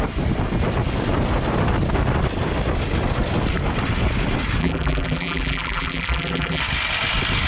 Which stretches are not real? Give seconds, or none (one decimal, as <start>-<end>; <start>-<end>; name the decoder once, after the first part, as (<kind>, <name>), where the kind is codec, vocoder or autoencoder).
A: 4.6-6.6 (vocoder, BigVGAN v2)